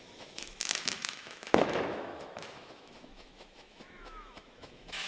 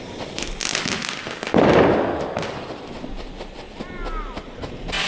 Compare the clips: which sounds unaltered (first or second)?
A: second